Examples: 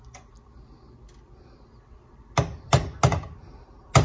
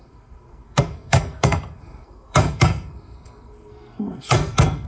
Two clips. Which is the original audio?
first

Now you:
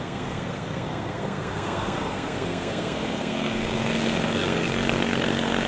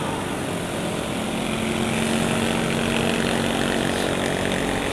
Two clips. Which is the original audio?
second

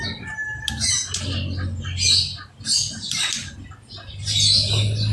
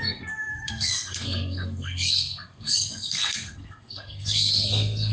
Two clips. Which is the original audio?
first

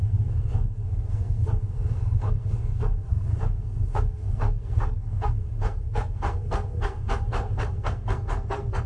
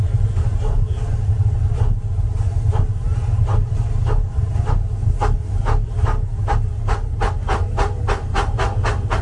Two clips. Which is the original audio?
second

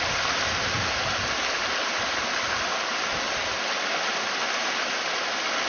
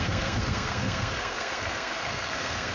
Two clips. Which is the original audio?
first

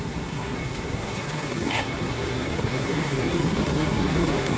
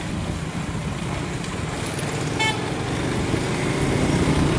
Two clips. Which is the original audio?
second